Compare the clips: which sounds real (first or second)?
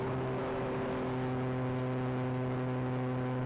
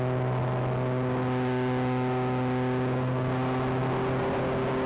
second